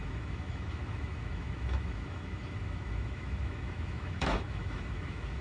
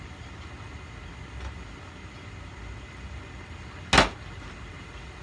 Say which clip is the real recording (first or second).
second